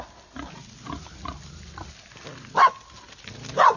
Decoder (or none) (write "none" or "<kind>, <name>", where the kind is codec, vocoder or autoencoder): none